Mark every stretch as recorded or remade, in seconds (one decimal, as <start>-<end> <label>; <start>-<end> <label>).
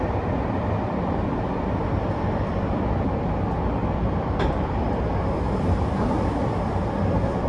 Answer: 0.0-3.8 recorded; 3.8-6.9 remade; 6.9-7.5 recorded